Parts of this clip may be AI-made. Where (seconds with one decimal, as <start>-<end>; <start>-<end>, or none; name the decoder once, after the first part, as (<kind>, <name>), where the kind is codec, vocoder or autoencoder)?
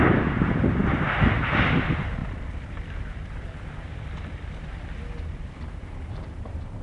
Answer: 0.0-6.8 (vocoder, BigVGAN v2)